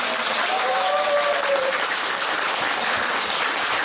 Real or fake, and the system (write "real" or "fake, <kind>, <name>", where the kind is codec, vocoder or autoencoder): fake, vocoder, BigVGAN v2